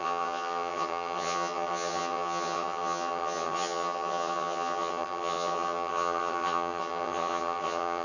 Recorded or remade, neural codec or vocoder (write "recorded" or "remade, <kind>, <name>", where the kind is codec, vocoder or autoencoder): remade, vocoder, HiFi-GAN